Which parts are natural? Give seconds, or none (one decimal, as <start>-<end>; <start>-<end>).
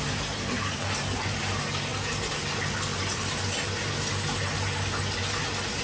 0.0-5.8